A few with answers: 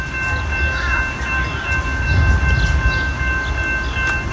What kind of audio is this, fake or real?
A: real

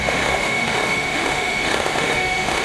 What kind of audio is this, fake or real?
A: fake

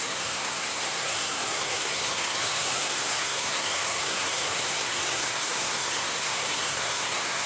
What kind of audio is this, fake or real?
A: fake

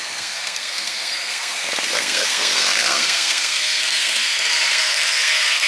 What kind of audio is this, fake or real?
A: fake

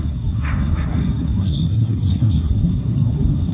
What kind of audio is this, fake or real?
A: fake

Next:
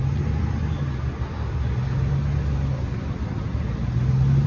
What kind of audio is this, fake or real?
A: real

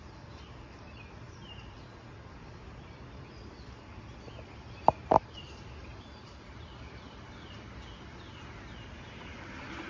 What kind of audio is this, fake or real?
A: fake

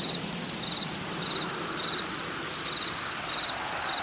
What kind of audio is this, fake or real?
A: real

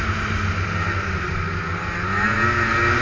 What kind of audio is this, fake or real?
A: real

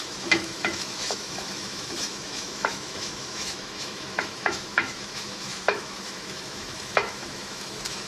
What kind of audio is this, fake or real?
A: fake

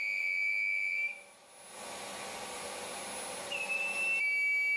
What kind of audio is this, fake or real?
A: real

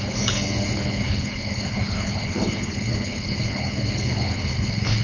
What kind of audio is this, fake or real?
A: fake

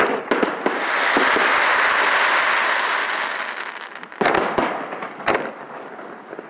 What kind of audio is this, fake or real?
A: real